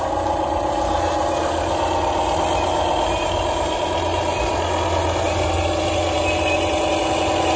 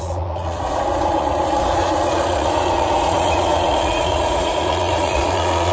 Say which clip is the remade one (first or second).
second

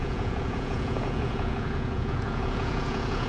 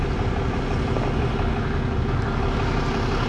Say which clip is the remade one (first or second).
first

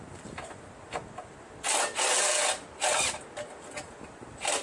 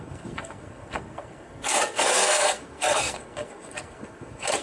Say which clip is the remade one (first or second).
second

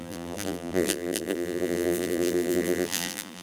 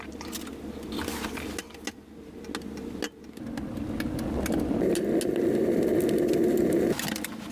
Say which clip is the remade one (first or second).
first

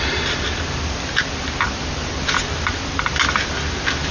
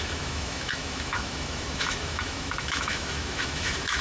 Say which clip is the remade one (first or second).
second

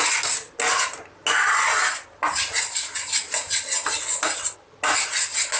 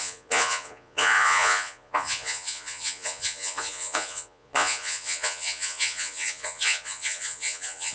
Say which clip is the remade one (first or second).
second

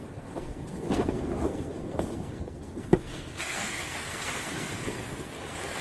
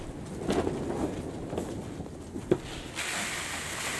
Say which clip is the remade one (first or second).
first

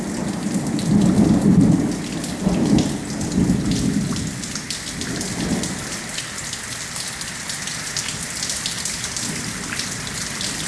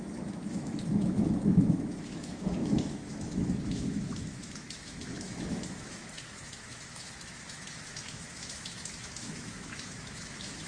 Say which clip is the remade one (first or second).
second